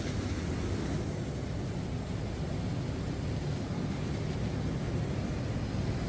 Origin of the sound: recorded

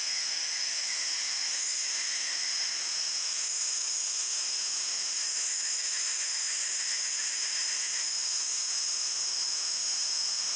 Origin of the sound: remade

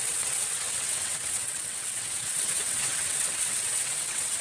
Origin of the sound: remade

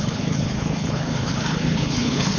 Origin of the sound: remade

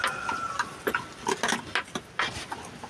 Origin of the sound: recorded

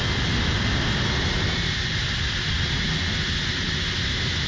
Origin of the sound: recorded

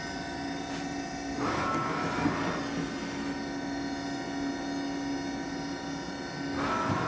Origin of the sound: recorded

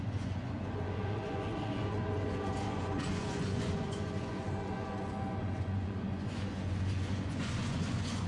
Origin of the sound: remade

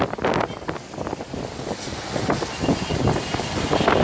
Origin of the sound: recorded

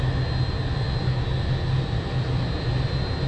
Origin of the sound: recorded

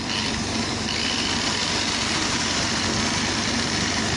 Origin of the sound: recorded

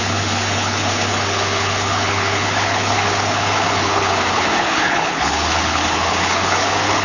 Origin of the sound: remade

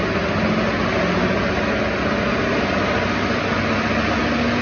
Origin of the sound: recorded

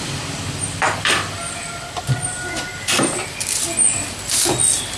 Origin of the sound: recorded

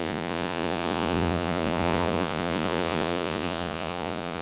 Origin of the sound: remade